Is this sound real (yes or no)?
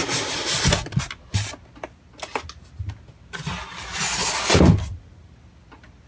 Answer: yes